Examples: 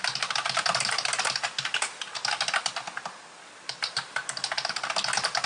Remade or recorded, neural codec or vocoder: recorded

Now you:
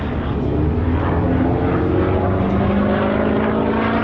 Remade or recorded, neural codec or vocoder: recorded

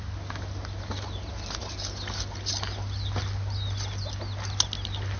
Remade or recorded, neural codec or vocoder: recorded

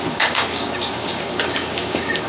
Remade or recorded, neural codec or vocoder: remade, codec, DAC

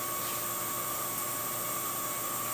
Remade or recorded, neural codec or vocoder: recorded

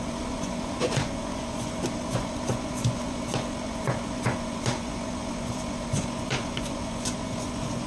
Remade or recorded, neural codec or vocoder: remade, vocoder, Vocos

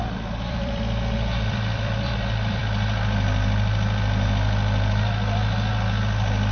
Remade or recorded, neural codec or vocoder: remade, vocoder, BigVGAN v2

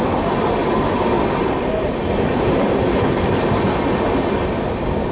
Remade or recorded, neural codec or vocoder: recorded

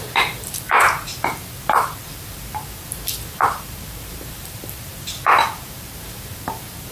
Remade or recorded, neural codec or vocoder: remade, vocoder, BigVGAN v2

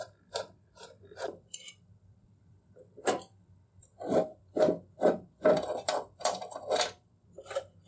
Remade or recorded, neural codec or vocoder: remade, vocoder, BigVGAN v2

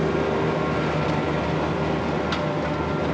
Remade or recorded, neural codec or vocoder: recorded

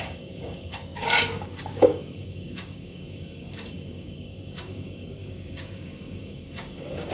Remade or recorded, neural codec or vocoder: remade, codec, DAC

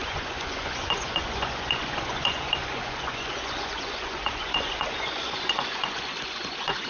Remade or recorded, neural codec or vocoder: remade, vocoder, Vocos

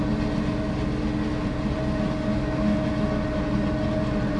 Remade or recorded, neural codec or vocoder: recorded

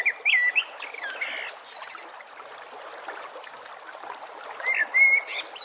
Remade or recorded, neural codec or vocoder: recorded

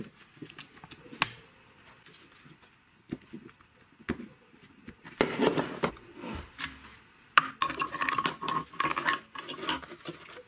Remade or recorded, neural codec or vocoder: recorded